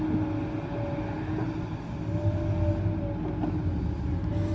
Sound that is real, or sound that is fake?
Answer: real